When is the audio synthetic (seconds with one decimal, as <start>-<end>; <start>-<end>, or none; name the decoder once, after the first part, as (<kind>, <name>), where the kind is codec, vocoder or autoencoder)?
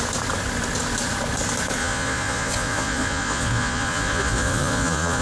1.8-5.2 (vocoder, Vocos)